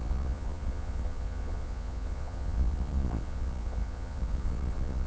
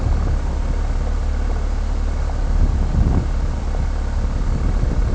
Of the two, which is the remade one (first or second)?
first